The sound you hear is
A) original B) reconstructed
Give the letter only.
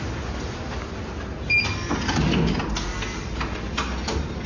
A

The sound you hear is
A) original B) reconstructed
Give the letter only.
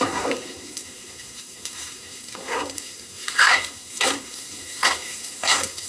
B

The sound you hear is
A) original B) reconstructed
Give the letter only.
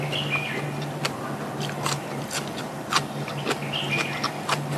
A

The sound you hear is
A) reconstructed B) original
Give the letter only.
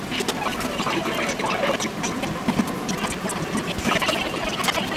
B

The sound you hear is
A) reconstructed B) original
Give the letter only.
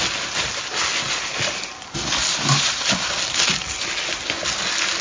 B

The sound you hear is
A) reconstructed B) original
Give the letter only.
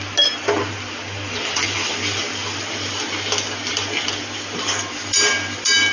B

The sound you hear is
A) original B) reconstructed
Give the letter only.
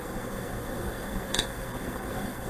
B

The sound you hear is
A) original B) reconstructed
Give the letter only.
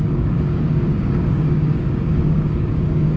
B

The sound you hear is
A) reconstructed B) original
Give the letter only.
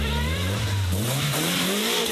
A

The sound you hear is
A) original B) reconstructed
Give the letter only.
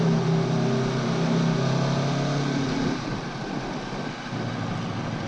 A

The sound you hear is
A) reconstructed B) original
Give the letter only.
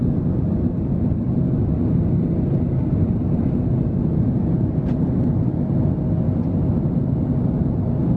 B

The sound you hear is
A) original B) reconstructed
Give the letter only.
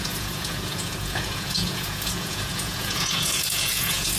B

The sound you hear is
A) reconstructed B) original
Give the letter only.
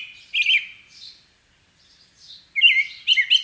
B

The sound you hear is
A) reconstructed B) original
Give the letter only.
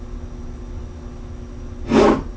B